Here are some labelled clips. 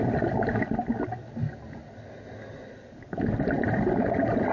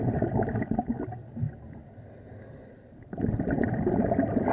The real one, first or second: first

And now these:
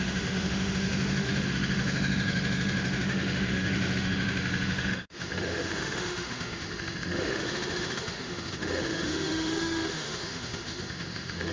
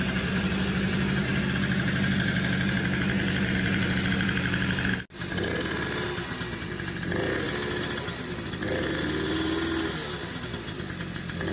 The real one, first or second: second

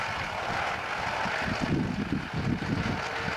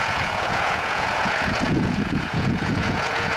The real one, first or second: first